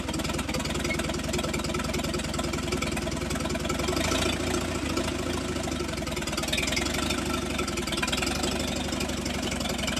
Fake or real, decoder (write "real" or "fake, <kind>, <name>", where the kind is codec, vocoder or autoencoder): real